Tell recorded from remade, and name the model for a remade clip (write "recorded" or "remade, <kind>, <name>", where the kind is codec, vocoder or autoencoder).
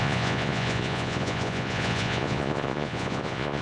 remade, vocoder, Vocos